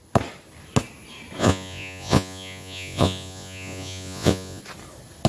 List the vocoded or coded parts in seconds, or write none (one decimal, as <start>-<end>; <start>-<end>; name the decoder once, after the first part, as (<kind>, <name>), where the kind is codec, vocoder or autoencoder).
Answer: 1.4-4.6 (vocoder, Vocos)